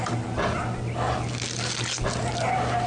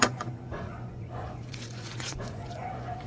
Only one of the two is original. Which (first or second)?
first